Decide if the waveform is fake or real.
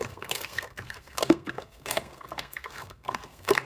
fake